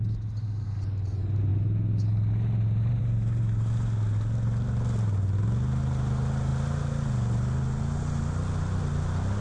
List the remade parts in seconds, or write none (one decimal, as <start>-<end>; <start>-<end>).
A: none